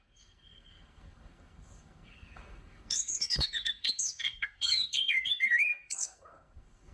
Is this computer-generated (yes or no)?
yes